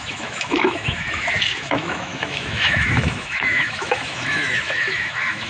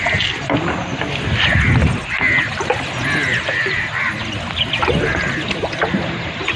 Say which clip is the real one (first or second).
second